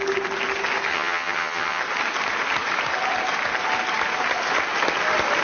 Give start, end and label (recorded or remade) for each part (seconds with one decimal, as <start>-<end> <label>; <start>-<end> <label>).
0.0-0.9 recorded; 0.9-1.8 remade; 1.8-5.4 recorded